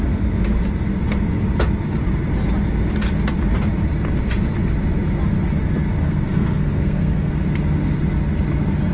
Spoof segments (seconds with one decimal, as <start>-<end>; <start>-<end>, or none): 6.0-7.3